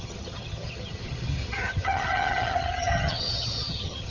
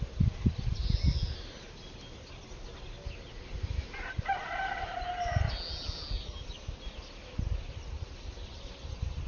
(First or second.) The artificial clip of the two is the first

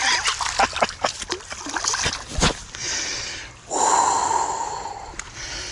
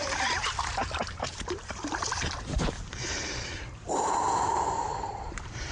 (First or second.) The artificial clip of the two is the second